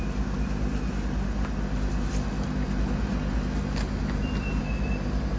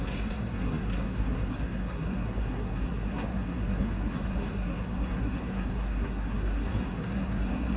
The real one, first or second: first